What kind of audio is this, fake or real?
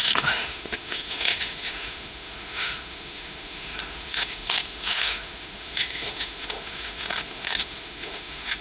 fake